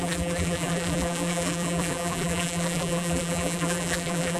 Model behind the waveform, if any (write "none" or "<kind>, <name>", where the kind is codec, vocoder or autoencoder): vocoder, BigVGAN v2